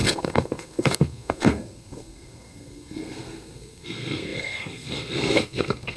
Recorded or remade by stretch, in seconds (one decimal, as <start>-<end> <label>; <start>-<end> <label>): 0.0-6.0 remade